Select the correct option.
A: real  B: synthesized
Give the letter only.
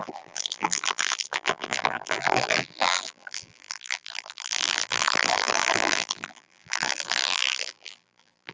B